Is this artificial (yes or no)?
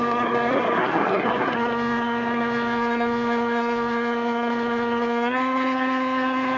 yes